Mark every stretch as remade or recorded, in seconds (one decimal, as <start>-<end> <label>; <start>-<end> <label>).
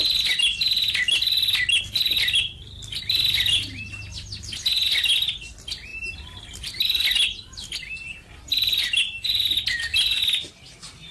0.0-11.1 recorded